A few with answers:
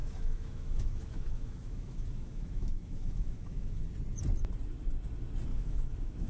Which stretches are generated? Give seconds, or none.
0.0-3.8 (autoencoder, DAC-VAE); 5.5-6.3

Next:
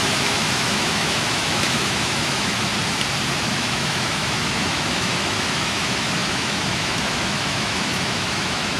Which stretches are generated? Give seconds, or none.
0.0-2.7 (autoencoder, DAC-VAE); 3.4-8.8